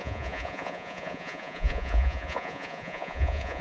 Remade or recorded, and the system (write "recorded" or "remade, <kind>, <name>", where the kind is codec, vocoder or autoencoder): remade, vocoder, Vocos